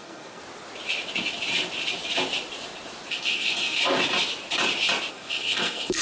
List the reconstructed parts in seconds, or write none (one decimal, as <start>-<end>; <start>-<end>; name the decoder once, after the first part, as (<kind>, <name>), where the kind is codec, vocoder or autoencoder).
0.0-0.4 (codec, SNAC); 3.1-3.8; 5.1-6.0

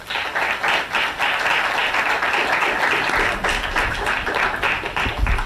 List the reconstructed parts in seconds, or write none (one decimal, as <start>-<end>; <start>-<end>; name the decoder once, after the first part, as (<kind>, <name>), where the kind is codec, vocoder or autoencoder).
none

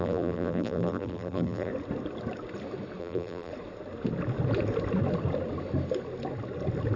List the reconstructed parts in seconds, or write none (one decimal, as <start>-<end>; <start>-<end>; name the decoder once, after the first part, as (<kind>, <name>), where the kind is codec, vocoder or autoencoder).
0.0-1.7 (vocoder, BigVGAN v2); 3.0-3.5

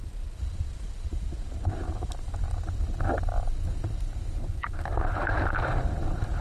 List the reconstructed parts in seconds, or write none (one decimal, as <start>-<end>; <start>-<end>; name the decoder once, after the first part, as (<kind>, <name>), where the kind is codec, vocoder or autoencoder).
1.1-2.5 (vocoder, BigVGAN v2); 3.7-6.4